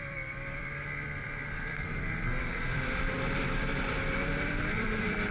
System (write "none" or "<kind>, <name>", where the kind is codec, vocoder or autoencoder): vocoder, BigVGAN v2